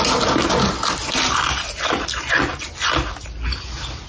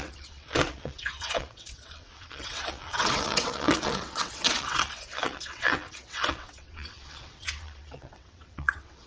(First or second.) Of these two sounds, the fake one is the second